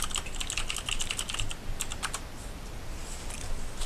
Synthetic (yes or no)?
no